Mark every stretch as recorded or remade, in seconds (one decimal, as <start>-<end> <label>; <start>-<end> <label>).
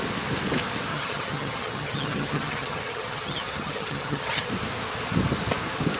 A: 0.0-0.9 recorded; 0.9-4.5 remade; 4.5-6.0 recorded